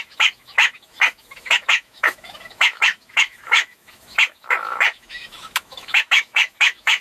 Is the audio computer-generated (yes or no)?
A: yes